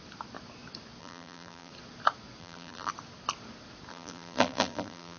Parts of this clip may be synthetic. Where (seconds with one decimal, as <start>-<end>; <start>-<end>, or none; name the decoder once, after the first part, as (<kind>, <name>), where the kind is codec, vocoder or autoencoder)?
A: 1.0-1.7 (vocoder, BigVGAN v2); 2.4-2.9; 3.9-5.2